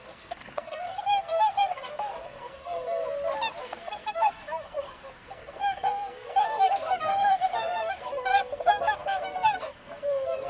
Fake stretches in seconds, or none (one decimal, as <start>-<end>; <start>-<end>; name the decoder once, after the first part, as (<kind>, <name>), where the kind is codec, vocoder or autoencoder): 0.0-3.0 (codec, SNAC); 3.6-10.5